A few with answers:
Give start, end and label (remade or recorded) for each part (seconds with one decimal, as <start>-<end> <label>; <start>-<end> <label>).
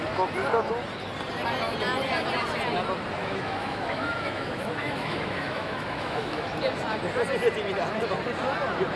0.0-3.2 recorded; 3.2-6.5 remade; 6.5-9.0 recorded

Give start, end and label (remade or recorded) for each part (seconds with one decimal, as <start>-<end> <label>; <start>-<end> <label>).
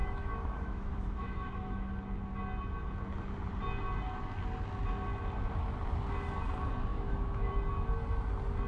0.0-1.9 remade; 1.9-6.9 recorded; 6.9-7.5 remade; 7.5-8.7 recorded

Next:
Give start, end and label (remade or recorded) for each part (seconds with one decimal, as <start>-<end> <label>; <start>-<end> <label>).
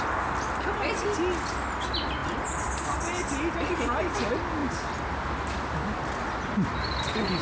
0.0-7.4 recorded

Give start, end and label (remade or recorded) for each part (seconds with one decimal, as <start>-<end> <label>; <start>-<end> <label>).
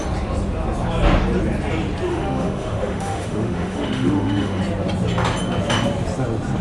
0.0-2.1 recorded; 2.1-4.6 remade; 4.6-6.6 recorded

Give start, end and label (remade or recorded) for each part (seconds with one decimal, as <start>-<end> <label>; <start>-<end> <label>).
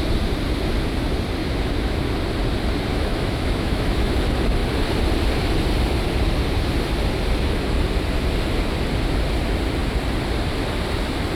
0.0-1.4 recorded; 1.4-2.0 remade; 2.0-2.9 recorded; 2.9-4.1 remade; 4.1-11.4 recorded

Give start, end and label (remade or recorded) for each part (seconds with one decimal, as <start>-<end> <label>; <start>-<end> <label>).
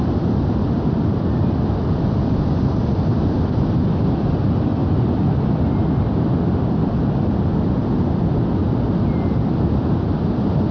0.0-10.7 recorded